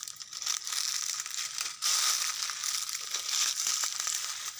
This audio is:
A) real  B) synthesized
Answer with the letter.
A